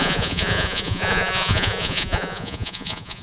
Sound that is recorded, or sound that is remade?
remade